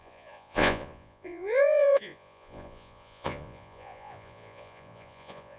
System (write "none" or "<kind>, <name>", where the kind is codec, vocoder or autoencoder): vocoder, Vocos